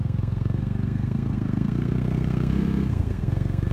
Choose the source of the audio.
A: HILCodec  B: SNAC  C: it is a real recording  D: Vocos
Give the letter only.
B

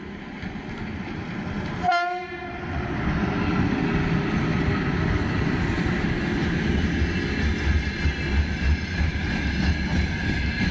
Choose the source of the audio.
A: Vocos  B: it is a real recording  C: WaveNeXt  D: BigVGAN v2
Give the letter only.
B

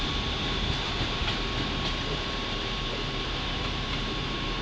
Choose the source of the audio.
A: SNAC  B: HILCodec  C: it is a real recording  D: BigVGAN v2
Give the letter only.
D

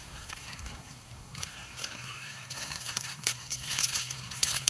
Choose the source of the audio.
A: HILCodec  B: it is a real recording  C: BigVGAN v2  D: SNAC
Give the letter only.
D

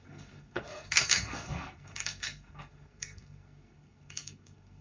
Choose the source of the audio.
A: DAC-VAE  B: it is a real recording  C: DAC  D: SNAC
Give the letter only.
D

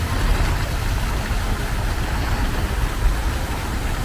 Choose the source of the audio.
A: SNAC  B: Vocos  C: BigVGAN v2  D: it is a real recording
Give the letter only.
D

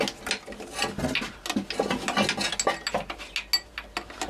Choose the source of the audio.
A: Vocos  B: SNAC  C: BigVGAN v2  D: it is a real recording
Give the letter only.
D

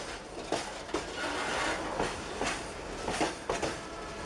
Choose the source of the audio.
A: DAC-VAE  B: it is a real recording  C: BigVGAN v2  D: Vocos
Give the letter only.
B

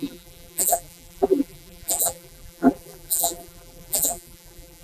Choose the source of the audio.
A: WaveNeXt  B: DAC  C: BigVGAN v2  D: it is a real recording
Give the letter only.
C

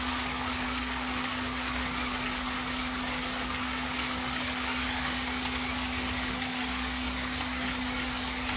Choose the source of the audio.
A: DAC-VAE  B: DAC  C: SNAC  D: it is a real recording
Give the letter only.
B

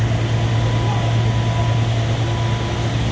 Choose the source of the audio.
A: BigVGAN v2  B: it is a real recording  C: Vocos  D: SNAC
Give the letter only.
B